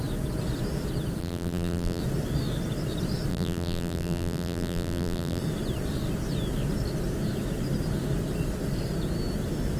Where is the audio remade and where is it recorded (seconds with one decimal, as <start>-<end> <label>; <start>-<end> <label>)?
0.0-1.2 recorded; 1.2-2.0 remade; 2.0-3.3 recorded; 3.3-5.4 remade; 5.4-9.8 recorded